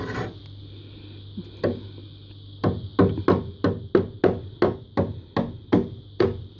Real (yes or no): yes